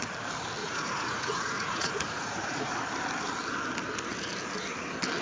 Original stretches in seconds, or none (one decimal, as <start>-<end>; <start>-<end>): 0.0-0.6; 2.7-5.2